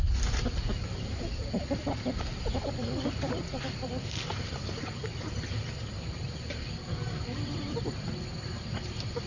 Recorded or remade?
recorded